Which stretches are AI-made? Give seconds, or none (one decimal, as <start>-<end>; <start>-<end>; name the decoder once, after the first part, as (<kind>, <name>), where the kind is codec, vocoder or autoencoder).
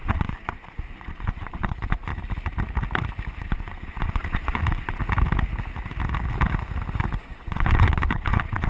0.0-2.1 (vocoder, Vocos); 3.4-5.0; 7.2-8.7